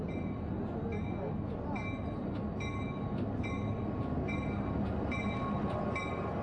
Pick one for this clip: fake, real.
real